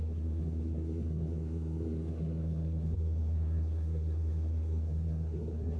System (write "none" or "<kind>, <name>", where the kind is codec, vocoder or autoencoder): codec, SNAC